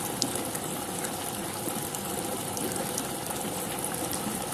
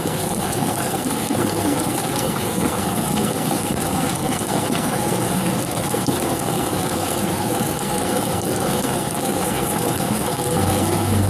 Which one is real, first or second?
first